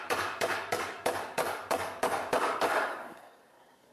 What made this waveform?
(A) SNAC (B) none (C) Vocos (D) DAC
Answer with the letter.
D